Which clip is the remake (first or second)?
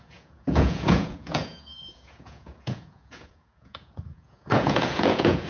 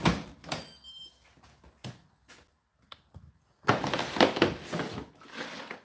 first